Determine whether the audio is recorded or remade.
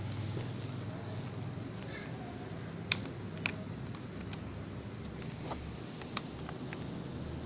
recorded